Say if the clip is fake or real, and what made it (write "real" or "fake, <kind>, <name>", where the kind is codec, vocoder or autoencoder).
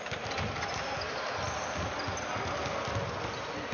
real